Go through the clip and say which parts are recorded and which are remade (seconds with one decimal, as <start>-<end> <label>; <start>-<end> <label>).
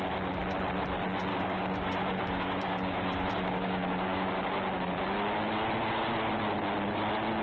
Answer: 0.0-1.3 recorded; 1.3-4.3 remade; 4.3-7.4 recorded